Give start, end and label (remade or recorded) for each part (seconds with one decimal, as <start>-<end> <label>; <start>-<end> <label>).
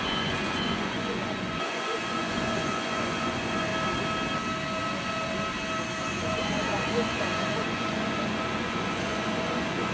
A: 0.0-3.7 remade; 3.7-6.0 recorded; 6.0-9.9 remade